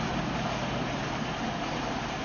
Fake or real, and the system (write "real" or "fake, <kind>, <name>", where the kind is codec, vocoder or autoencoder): real